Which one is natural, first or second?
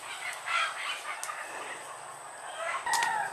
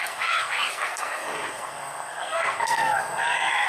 first